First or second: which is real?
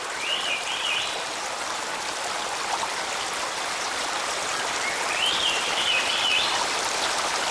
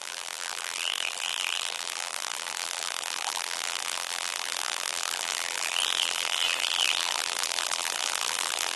first